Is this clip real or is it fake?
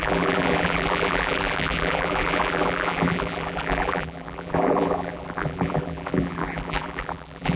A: fake